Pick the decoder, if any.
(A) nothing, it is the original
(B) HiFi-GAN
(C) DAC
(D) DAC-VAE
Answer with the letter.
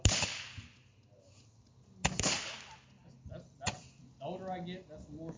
A